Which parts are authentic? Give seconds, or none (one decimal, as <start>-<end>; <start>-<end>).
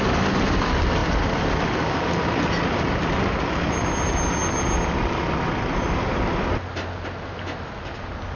0.0-8.3